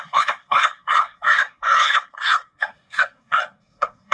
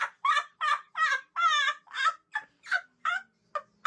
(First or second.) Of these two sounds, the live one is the second